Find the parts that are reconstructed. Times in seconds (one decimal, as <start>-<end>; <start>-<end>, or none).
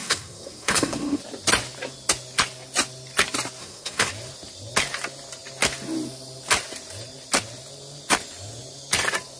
0.0-1.2; 3.6-4.1